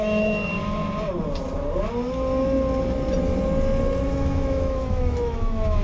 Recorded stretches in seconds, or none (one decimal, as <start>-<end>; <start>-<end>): 0.5-4.0